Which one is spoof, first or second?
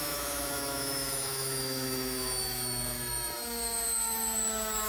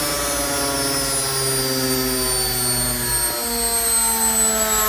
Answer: first